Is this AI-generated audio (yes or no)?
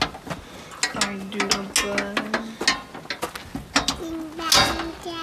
no